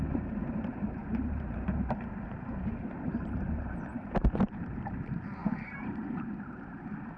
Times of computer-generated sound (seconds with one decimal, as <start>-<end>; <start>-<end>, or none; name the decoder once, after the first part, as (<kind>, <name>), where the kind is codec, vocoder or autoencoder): 0.0-7.2 (vocoder, BigVGAN v2)

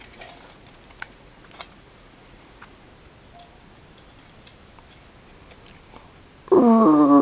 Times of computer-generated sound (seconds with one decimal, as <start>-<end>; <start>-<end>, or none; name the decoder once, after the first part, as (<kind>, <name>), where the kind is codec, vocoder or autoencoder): 0.0-2.9 (vocoder, Vocos)

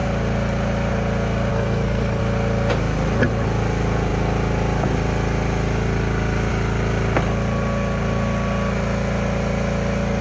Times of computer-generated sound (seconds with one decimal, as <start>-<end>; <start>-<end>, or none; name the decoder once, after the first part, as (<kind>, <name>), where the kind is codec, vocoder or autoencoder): 1.5-2.2 (codec, SNAC)

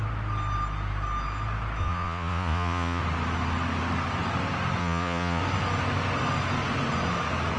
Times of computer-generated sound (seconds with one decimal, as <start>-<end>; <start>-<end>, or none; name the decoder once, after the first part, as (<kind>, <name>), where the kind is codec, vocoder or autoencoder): 1.8-3.0 (vocoder, Vocos); 4.8-5.4

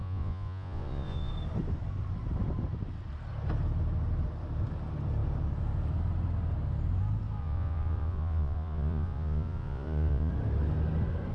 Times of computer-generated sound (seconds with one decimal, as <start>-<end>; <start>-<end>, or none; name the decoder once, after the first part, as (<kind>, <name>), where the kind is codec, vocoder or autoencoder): 0.0-1.3 (vocoder, Vocos); 7.4-10.3